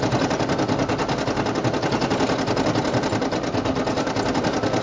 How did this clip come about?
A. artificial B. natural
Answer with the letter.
B